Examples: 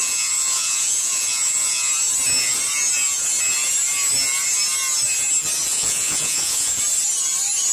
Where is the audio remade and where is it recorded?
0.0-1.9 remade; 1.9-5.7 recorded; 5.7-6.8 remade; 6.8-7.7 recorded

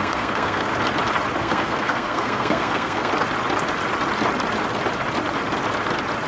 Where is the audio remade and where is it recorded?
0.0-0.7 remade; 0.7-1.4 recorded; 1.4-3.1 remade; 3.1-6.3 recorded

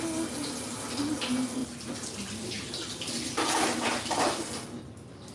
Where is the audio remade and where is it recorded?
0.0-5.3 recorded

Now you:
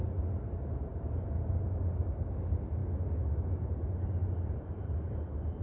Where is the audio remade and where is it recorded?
0.0-4.2 recorded; 4.2-5.6 remade

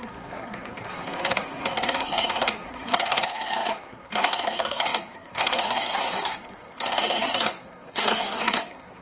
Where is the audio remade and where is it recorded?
0.0-9.0 remade

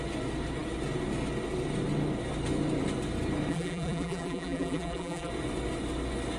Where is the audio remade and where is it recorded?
0.0-3.5 recorded; 3.5-5.3 remade; 5.3-6.4 recorded

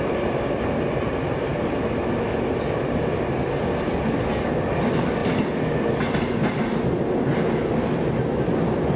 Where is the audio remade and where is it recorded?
0.0-9.0 recorded

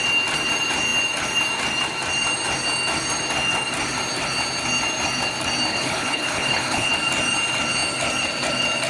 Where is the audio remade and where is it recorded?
0.0-5.7 recorded; 5.7-6.9 remade; 6.9-8.9 recorded